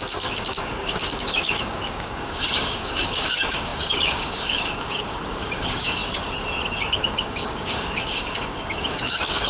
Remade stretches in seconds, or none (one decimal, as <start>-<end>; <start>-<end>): 0.0-6.0; 6.7-9.5